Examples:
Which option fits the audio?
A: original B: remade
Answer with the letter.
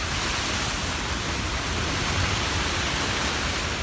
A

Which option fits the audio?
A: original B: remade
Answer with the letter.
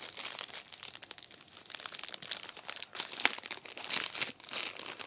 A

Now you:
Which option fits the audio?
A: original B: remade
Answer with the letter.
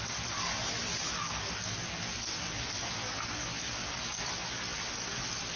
A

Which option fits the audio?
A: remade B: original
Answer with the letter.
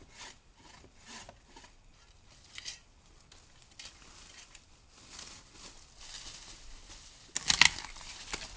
B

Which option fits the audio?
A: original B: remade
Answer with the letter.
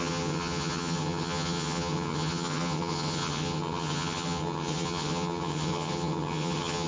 B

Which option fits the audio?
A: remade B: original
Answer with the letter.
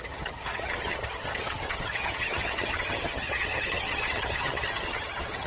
A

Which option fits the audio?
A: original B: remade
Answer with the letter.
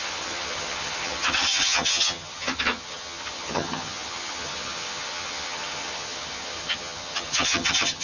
B